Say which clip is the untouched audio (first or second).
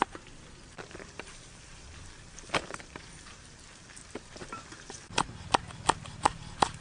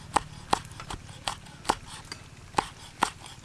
second